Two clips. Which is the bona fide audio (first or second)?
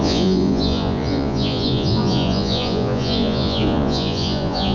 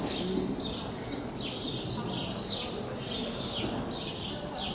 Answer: second